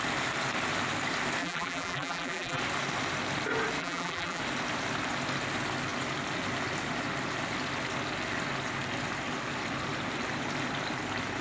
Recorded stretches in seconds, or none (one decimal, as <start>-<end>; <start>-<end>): 0.0-1.4; 2.6-3.8; 4.4-11.4